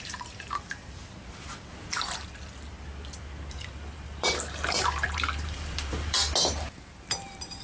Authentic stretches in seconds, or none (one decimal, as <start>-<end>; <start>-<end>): 1.0-3.5; 6.2-7.1